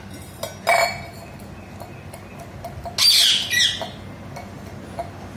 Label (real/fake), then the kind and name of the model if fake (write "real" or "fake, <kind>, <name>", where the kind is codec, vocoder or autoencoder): real